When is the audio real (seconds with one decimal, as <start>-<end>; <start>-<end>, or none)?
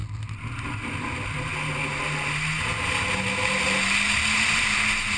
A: 0.0-5.2